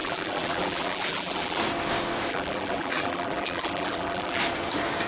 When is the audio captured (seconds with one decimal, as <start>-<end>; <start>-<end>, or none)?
1.6-2.3; 4.4-5.1